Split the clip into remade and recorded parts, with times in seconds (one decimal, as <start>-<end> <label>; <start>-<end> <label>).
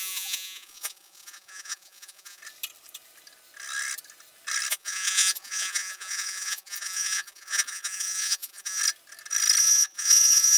0.0-2.4 remade; 2.4-4.7 recorded; 4.7-8.8 remade; 8.8-9.6 recorded; 9.6-10.6 remade